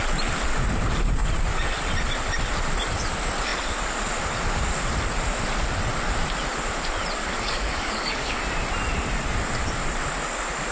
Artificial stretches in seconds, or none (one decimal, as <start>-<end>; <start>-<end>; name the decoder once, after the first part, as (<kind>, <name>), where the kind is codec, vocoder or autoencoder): 7.2-8.4 (codec, DAC)